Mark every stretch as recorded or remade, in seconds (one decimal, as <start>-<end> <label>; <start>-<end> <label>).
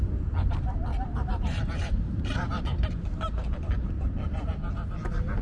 0.0-0.9 recorded; 0.9-4.1 remade; 4.1-5.4 recorded